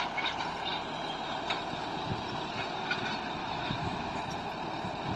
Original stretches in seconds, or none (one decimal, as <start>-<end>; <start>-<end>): 0.0-3.4; 4.2-5.2